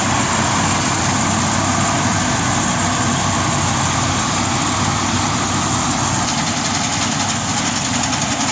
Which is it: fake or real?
real